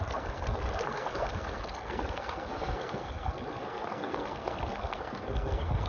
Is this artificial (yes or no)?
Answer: yes